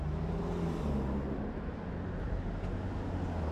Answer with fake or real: real